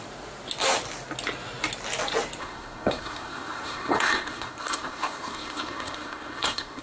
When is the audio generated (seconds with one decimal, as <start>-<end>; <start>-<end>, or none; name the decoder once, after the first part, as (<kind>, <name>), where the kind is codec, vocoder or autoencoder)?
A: 2.4-6.8 (codec, SNAC)